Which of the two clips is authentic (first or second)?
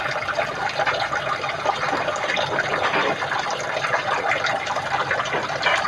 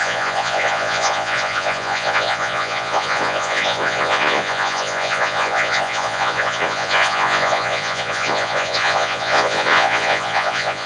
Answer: first